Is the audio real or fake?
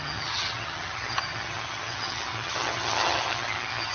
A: fake